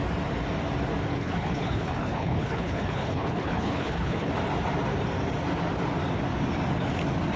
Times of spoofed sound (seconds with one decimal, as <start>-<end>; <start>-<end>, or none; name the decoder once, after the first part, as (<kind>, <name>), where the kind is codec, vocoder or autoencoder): 1.1-4.3 (codec, HILCodec)